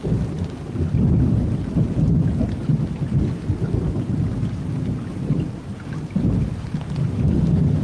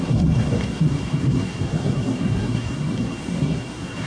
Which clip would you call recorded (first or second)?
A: first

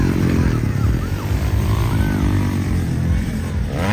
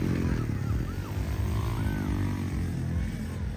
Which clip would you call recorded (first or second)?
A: second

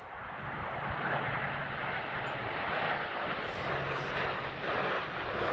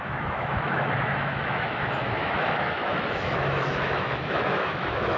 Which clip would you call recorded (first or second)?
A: first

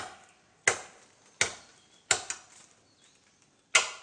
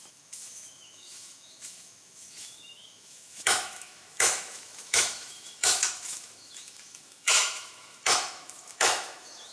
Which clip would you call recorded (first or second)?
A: first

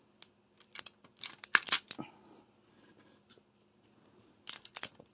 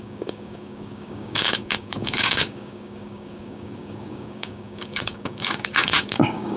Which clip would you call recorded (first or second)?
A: first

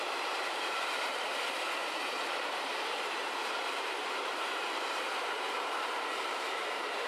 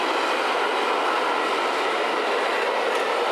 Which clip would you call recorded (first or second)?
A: second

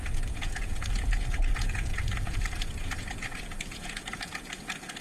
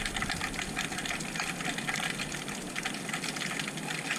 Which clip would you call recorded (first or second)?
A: second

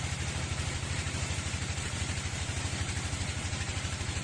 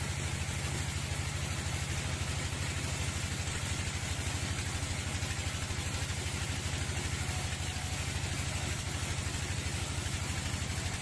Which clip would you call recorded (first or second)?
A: second